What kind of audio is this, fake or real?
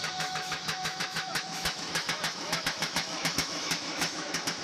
fake